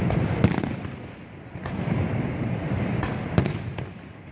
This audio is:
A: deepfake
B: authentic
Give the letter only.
B